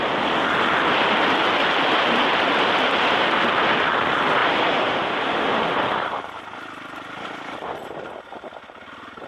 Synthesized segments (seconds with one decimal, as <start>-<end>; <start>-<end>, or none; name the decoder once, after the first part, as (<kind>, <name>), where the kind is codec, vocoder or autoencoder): 1.6-3.1 (vocoder, BigVGAN v2); 4.4-6.4